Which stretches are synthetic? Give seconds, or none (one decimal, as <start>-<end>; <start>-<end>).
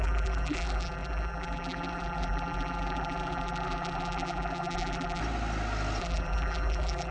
0.0-5.2; 6.0-7.1